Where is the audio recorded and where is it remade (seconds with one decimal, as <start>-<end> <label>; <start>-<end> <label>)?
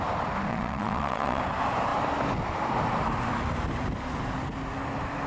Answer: 0.0-0.5 recorded; 0.5-1.4 remade; 1.4-5.3 recorded